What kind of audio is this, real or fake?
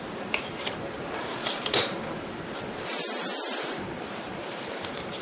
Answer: fake